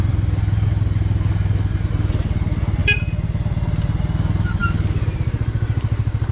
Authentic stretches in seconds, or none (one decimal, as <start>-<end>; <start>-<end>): 0.0-6.3